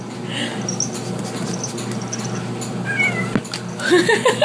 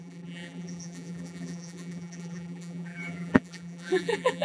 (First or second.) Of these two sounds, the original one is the first